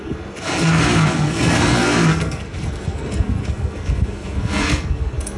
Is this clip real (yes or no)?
no